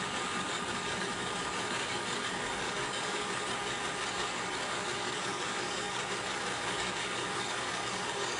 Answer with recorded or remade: remade